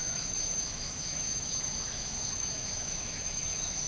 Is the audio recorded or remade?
remade